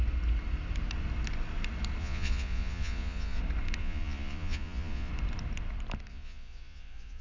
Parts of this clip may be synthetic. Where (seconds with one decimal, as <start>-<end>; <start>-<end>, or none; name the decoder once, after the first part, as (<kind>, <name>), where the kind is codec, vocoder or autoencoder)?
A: 2.0-3.4 (vocoder, Vocos); 3.8-5.1; 6.1-7.2